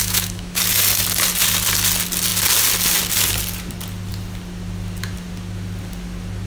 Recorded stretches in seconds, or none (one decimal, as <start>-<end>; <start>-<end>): 0.6-6.5